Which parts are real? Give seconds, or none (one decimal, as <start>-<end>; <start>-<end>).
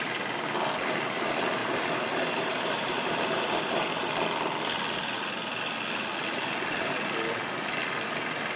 0.0-1.6; 4.1-8.6